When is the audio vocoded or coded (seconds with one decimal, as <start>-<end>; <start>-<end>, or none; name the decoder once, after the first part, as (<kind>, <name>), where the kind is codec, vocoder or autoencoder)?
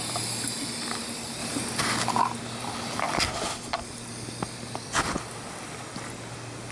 none